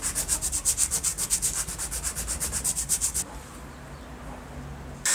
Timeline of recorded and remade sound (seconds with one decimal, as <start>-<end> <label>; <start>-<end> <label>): 0.0-1.1 recorded; 1.1-4.2 remade; 4.2-5.1 recorded